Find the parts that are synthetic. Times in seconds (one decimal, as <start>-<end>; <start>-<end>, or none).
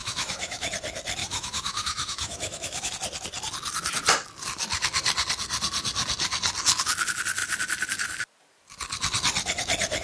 0.0-0.7; 1.2-2.9